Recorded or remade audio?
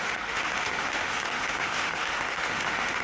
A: remade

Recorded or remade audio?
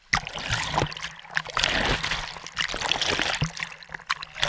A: recorded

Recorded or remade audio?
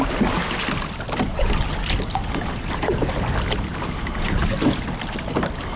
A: recorded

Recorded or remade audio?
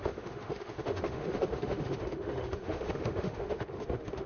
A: remade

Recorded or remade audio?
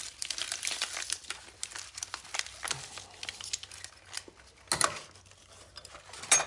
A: recorded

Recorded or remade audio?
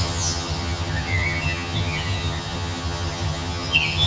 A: remade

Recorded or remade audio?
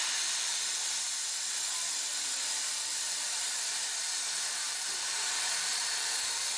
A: remade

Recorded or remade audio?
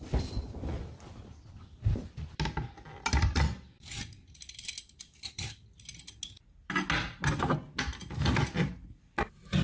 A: recorded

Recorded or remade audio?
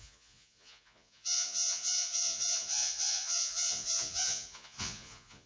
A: remade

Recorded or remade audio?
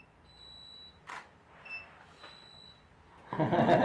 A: recorded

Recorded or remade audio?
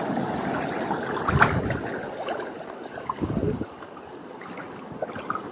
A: recorded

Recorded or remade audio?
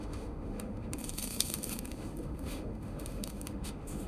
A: remade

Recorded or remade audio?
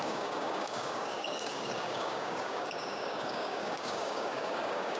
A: remade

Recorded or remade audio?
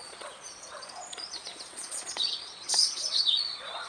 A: remade